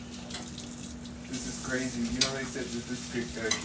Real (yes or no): yes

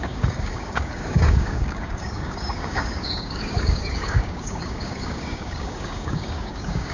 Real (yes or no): no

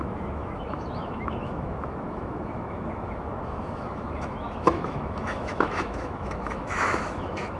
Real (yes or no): no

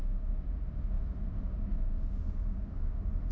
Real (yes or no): no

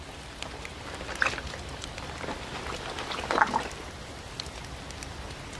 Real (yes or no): yes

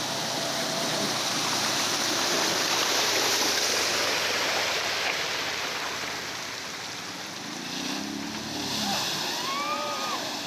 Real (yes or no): yes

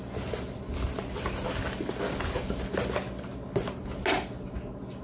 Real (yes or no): yes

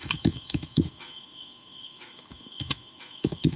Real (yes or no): no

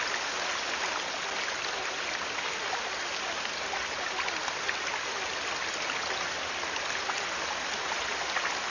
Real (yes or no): yes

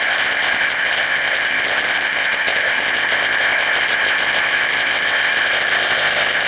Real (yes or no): no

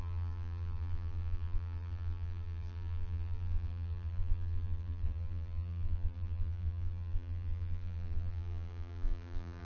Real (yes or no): no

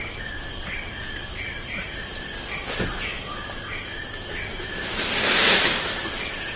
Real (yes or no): yes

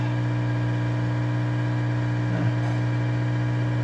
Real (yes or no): yes